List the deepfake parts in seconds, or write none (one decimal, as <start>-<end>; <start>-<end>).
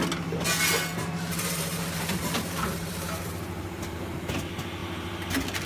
0.9-4.3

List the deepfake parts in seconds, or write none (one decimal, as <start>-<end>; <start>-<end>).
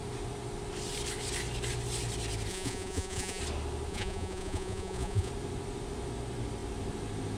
2.5-3.4; 3.9-5.3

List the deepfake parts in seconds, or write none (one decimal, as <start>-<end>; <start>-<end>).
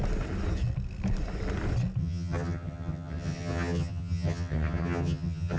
2.0-5.6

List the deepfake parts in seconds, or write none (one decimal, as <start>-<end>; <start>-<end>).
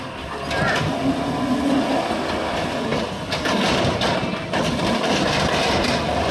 none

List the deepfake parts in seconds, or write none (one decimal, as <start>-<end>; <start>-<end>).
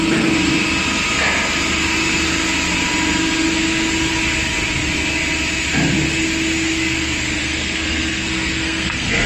7.4-9.3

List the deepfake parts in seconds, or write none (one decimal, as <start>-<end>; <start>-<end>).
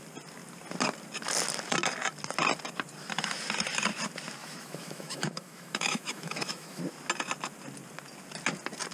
4.4-6.8